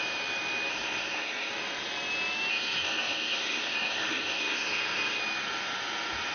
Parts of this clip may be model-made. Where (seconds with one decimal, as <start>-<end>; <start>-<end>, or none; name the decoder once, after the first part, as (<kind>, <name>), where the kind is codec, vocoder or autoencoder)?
0.7-1.5 (codec, SNAC); 2.5-5.2